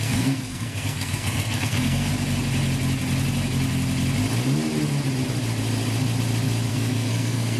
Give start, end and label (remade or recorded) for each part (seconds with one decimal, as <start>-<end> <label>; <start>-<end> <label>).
0.0-2.1 remade; 2.1-6.7 recorded; 6.7-7.6 remade